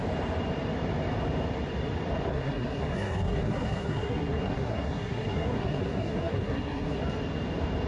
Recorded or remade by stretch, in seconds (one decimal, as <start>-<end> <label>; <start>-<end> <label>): 0.0-2.3 recorded; 2.3-7.0 remade; 7.0-7.9 recorded